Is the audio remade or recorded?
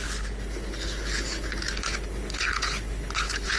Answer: remade